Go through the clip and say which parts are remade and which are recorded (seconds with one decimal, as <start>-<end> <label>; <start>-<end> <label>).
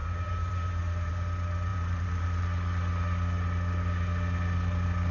0.0-1.1 remade; 1.1-1.7 recorded; 1.7-2.4 remade; 2.4-5.1 recorded